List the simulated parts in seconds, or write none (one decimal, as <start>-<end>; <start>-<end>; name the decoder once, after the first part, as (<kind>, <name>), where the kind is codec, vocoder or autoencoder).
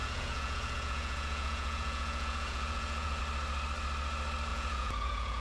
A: 0.0-3.2 (vocoder, Vocos); 4.5-5.4